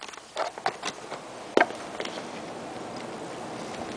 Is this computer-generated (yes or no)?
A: no